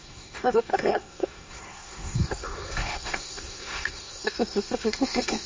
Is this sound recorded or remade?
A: remade